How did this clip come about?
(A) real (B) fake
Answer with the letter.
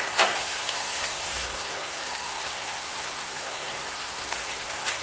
B